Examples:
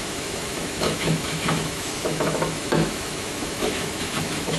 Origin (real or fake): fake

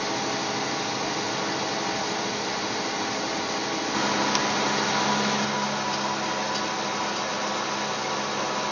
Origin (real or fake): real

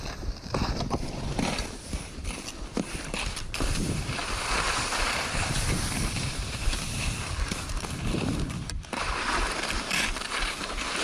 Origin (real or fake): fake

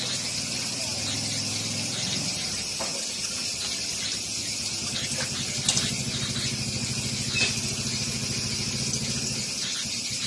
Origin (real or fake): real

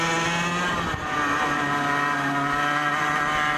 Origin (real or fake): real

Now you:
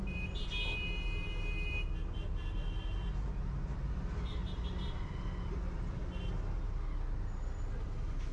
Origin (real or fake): real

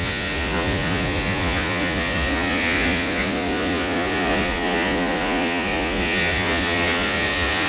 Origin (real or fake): fake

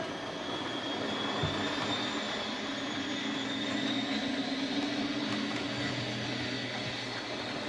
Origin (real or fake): real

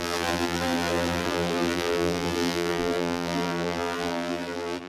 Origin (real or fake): fake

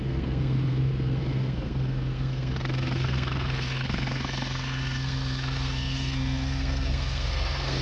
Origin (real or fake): fake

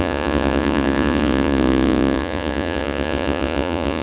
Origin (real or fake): fake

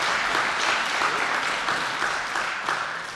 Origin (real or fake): real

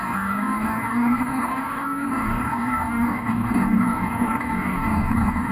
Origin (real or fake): fake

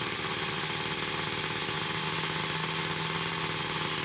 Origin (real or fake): real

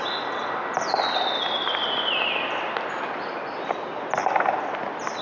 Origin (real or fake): real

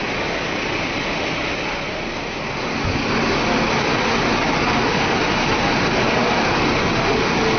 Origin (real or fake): real